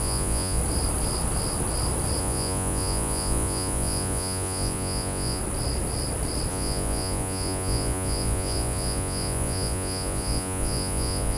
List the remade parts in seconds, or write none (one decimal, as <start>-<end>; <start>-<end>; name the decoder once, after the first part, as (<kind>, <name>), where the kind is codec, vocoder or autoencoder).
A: 0.0-0.6 (vocoder, Vocos); 2.2-5.4; 6.5-11.4

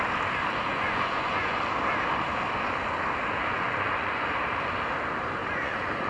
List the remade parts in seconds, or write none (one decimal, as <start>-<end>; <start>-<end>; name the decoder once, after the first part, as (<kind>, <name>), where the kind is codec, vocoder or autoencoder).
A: 0.7-1.6 (vocoder, Vocos); 3.4-4.3; 5.4-6.1